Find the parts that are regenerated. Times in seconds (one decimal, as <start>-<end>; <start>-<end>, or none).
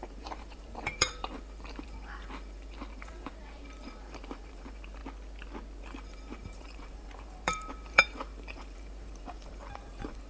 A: 0.0-5.0; 5.8-10.3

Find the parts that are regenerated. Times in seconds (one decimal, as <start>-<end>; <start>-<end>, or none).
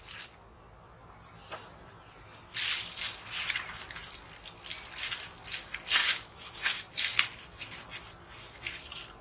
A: 6.0-6.9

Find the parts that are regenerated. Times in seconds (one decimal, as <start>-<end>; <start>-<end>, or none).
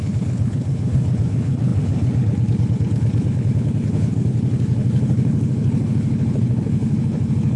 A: 0.0-7.6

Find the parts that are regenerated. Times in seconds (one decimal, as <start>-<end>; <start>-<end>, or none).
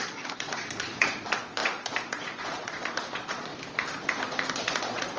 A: 0.0-3.5; 4.5-5.2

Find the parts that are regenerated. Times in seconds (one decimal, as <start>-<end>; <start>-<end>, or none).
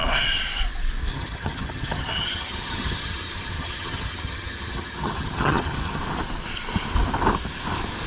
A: 1.1-6.0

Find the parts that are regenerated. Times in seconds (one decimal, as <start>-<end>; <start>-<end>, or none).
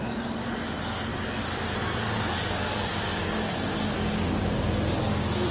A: none